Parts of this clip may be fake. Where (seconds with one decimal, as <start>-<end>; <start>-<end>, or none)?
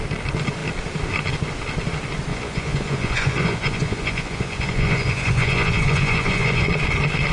2.3-6.7